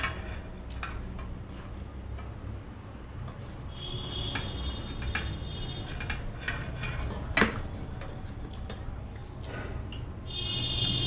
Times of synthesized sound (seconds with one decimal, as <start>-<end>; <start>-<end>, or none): none